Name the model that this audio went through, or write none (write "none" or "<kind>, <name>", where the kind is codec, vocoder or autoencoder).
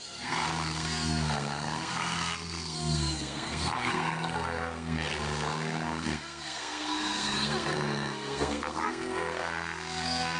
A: codec, SNAC